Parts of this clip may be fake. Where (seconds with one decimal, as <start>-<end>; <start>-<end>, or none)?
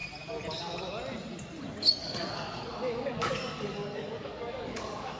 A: 2.0-5.2